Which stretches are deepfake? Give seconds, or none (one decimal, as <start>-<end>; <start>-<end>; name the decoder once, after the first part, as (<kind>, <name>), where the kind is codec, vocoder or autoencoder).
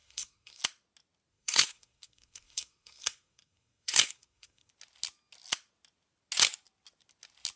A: 0.0-0.6 (codec, SNAC); 1.3-4.7